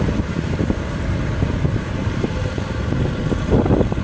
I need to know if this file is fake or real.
fake